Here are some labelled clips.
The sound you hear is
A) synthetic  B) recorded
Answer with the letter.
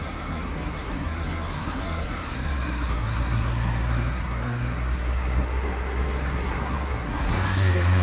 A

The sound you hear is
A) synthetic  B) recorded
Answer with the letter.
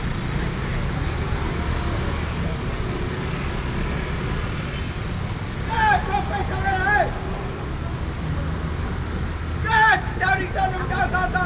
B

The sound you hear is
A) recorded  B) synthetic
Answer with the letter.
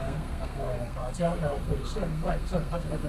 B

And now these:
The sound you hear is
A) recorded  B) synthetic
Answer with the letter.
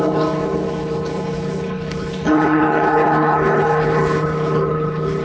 B